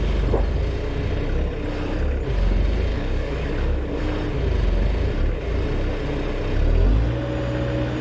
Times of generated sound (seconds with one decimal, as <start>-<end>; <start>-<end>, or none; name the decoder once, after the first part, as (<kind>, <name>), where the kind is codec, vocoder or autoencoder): 2.9-4.0 (codec, DAC)